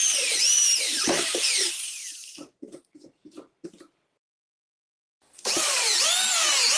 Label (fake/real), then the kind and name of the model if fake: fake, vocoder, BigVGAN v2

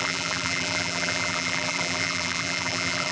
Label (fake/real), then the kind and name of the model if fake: fake, vocoder, BigVGAN v2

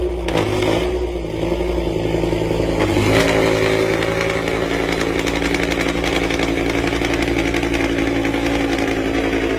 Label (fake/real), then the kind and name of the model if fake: real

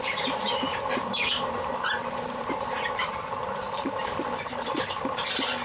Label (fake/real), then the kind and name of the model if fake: fake, vocoder, BigVGAN v2